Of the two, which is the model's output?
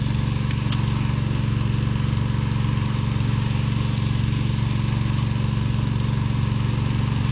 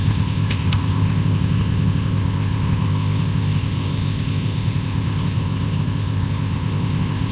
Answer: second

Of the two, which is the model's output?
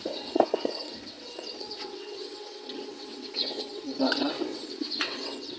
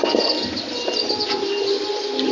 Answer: first